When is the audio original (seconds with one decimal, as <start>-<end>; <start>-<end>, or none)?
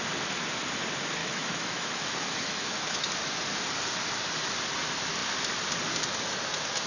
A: 0.0-1.2; 3.1-6.9